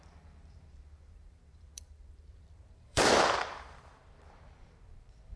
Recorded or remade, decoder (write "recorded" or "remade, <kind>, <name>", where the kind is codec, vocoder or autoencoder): remade, vocoder, BigVGAN v2